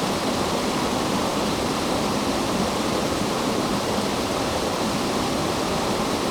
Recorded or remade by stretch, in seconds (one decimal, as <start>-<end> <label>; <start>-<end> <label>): 0.0-1.3 recorded; 1.3-5.0 remade; 5.0-6.3 recorded